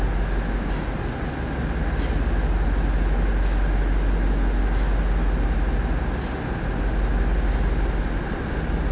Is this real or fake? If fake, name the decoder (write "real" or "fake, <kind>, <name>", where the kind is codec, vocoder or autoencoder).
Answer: real